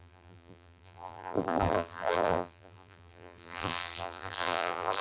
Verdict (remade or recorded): remade